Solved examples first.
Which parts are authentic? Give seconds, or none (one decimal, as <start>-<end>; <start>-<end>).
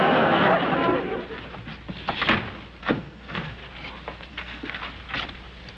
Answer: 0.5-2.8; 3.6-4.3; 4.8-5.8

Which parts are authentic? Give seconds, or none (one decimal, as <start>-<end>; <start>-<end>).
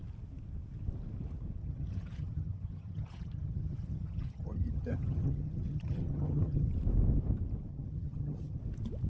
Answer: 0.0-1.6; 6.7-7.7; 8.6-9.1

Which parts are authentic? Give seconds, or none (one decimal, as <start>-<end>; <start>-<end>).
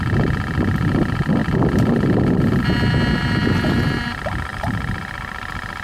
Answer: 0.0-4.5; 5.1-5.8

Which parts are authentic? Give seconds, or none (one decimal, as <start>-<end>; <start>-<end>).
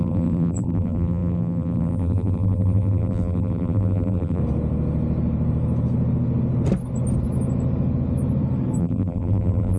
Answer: 4.4-8.8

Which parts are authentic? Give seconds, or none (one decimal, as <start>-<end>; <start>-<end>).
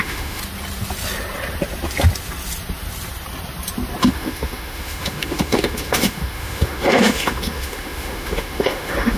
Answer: 0.4-4.0